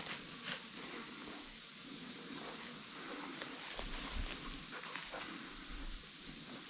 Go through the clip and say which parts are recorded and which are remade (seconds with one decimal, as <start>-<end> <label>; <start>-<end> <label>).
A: 0.0-6.7 recorded